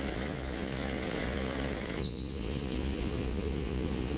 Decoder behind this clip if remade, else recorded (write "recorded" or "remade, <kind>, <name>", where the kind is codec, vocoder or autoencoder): remade, vocoder, Vocos